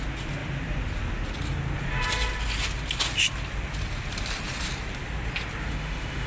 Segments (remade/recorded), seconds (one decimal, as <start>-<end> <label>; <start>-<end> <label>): 0.0-5.7 recorded; 5.7-6.3 remade